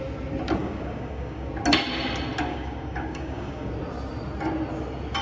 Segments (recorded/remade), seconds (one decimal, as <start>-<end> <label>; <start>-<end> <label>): 0.0-0.6 recorded; 0.6-1.5 remade; 1.5-2.5 recorded; 2.5-3.7 remade; 3.7-5.2 recorded